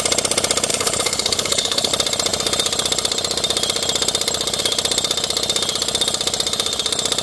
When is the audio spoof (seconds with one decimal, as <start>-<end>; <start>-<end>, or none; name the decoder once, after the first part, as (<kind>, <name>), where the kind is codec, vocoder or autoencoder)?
0.7-1.9 (codec, HILCodec)